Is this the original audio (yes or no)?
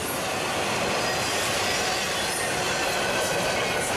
yes